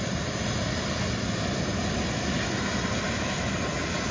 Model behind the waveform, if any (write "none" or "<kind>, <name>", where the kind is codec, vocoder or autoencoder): none